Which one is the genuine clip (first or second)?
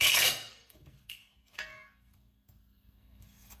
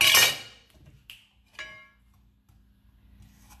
second